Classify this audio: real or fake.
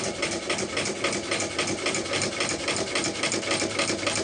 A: real